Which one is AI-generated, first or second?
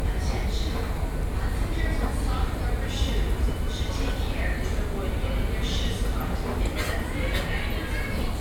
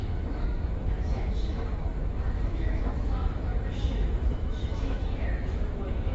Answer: second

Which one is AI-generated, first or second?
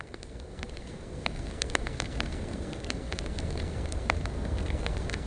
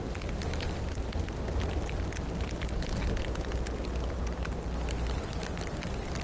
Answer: first